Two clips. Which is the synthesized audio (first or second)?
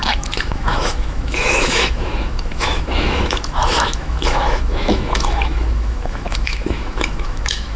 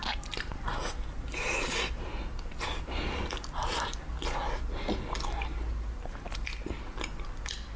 first